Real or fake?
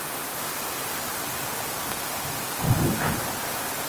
real